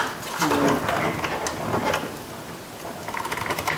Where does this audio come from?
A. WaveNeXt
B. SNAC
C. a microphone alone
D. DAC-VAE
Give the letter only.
C